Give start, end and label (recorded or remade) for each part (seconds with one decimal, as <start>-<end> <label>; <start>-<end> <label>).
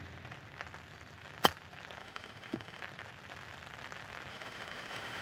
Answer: 0.0-2.0 recorded; 2.0-2.8 remade; 2.8-4.3 recorded; 4.3-5.2 remade